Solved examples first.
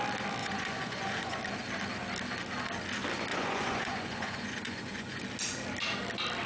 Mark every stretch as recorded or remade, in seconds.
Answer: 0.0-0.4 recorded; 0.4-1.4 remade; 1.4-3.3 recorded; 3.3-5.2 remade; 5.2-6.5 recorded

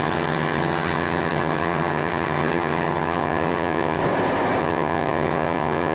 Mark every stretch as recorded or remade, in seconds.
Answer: 0.0-4.0 remade; 4.0-4.6 recorded; 4.6-5.9 remade

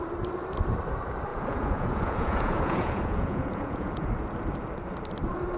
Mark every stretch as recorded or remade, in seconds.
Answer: 0.0-1.3 recorded; 1.3-4.1 remade; 4.1-5.6 recorded

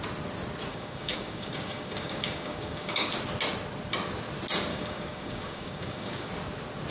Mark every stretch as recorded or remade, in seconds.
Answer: 0.0-0.7 recorded; 0.7-3.1 remade; 3.1-4.7 recorded; 4.7-6.3 remade; 6.3-6.9 recorded

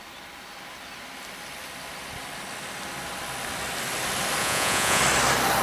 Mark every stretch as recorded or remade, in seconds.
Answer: 0.0-4.4 recorded; 4.4-5.0 remade; 5.0-5.6 recorded

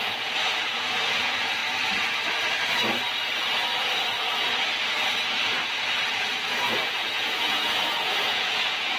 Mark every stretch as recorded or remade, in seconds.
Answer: 0.0-1.6 remade; 1.6-6.1 recorded; 6.1-9.0 remade

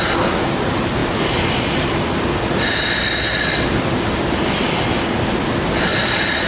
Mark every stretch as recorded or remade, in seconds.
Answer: 0.0-6.5 recorded

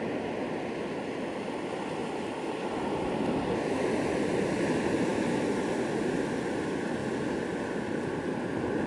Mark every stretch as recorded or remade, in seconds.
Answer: 0.0-8.9 recorded